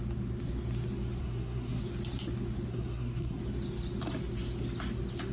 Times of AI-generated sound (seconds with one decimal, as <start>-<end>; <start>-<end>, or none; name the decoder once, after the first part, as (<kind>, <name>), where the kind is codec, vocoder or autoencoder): 1.2-1.8 (codec, SNAC); 2.7-3.4